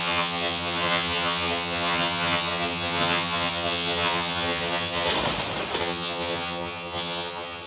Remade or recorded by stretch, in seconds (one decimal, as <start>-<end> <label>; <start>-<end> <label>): 0.0-5.1 remade; 5.1-5.8 recorded; 5.8-7.7 remade